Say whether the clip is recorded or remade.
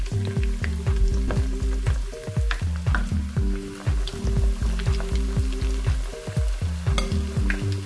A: recorded